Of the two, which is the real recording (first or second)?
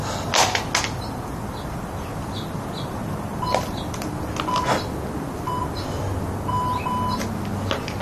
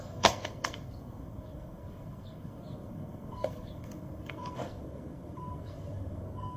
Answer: first